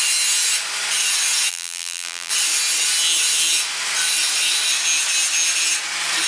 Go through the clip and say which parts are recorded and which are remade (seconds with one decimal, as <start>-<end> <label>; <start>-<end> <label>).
0.0-1.5 recorded; 1.5-2.3 remade; 2.3-6.3 recorded